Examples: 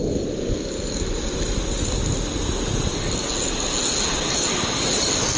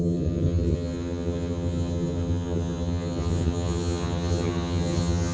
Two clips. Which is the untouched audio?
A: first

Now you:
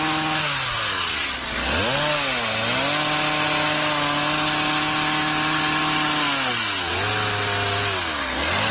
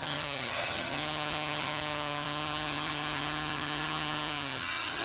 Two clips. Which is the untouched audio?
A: first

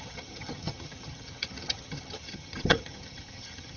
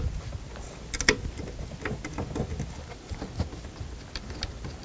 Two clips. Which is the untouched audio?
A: second